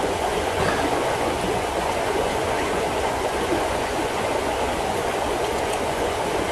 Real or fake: fake